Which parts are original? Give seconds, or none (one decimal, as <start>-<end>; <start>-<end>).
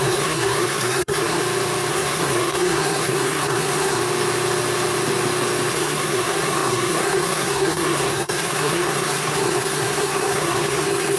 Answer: 1.4-1.9; 4.0-5.7